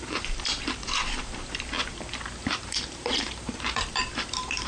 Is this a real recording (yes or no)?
no